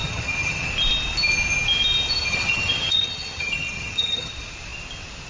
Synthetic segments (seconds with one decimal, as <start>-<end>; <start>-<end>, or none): 0.0-0.7; 2.3-4.3